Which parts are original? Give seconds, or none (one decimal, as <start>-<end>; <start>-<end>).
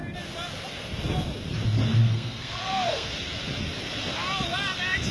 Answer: 0.0-2.0; 3.1-5.1